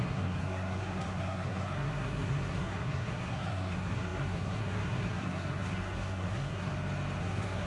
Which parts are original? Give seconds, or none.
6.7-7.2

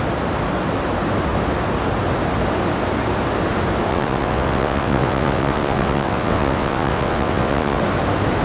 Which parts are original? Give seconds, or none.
0.0-3.9; 7.8-8.4

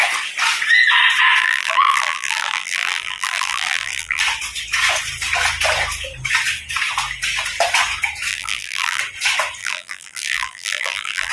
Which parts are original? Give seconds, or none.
0.0-1.4; 4.2-8.3; 9.0-9.6

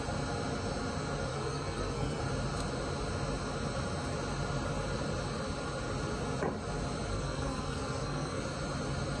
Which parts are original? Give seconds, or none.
0.0-1.3; 2.2-7.1; 8.4-9.2

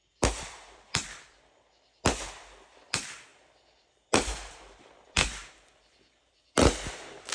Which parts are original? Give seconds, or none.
1.7-3.3; 6.8-7.3

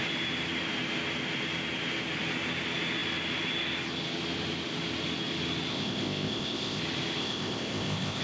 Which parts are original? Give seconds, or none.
0.0-5.7; 6.8-7.2

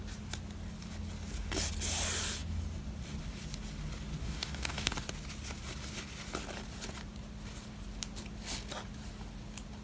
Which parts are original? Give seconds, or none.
0.0-4.2; 4.9-9.8

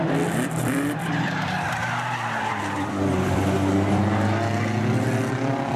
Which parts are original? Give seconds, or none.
3.4-5.3